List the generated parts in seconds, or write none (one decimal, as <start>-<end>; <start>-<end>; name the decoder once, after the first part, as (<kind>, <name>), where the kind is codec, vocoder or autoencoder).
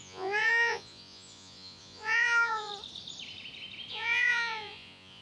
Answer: 0.0-2.7 (vocoder, Vocos); 3.9-5.2